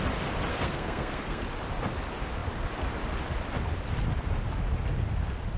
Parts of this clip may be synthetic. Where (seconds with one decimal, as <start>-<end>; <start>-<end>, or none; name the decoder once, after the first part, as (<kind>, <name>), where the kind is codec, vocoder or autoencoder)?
0.5-1.4 (codec, SNAC)